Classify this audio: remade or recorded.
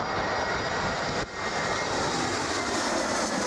recorded